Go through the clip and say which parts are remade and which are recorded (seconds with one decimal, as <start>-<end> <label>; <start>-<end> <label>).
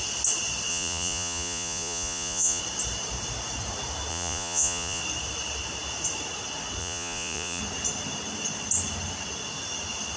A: 0.0-0.7 recorded; 0.7-2.6 remade; 2.6-4.1 recorded; 4.1-5.0 remade; 5.0-6.8 recorded; 6.8-7.6 remade; 7.6-10.2 recorded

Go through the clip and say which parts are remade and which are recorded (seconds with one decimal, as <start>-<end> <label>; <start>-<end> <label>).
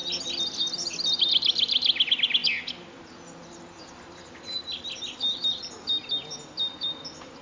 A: 0.0-7.4 recorded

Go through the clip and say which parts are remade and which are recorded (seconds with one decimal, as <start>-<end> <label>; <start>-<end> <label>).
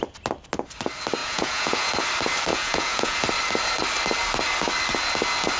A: 0.0-1.2 recorded; 1.2-1.9 remade; 1.9-2.5 recorded; 2.5-3.2 remade; 3.2-5.6 recorded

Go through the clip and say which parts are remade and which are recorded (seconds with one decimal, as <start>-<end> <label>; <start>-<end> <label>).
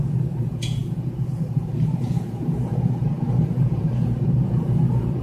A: 0.0-5.2 remade